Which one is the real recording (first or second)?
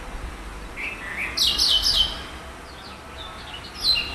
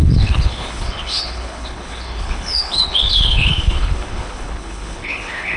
first